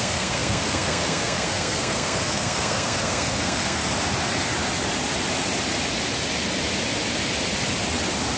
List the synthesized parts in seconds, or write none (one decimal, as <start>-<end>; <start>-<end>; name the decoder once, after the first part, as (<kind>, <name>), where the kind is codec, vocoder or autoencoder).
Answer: 0.0-3.8 (codec, SNAC)